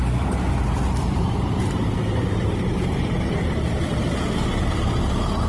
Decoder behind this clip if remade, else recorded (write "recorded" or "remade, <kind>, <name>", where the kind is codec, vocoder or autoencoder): remade, vocoder, BigVGAN v2